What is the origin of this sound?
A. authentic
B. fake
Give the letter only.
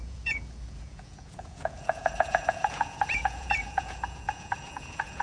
B